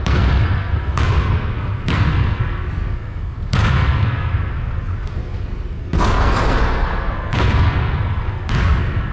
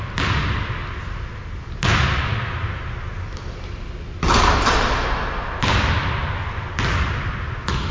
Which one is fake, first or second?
first